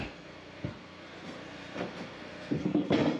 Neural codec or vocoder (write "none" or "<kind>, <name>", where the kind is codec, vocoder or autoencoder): codec, SNAC